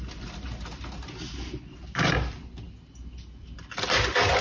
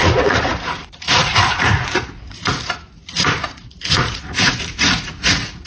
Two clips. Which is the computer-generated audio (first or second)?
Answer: second